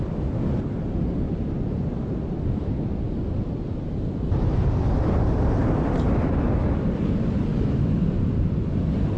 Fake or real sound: real